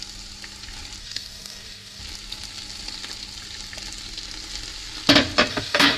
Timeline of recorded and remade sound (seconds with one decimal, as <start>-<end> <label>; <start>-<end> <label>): 0.0-1.0 recorded; 1.0-2.0 remade; 2.0-5.5 recorded; 5.5-6.0 remade